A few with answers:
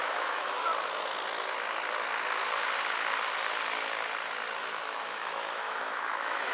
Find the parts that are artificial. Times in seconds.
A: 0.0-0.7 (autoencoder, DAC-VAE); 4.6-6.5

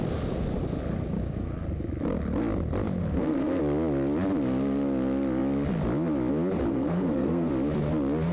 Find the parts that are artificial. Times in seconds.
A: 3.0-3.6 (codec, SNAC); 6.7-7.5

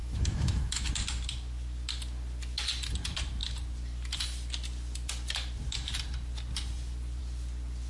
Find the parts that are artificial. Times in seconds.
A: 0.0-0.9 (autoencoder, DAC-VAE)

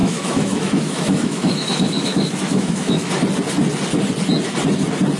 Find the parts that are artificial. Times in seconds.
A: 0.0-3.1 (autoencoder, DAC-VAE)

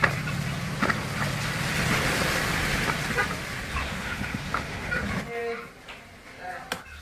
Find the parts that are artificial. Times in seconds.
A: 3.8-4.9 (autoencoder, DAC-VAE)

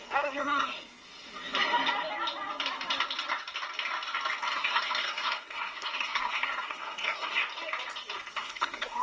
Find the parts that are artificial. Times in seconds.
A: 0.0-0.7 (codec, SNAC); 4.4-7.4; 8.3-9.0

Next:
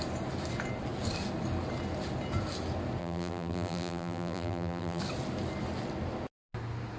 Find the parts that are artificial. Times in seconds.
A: 3.0-5.0 (vocoder, BigVGAN v2)

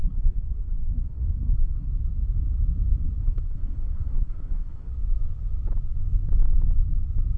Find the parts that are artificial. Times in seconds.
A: 0.0-1.9 (codec, SNAC); 3.2-4.9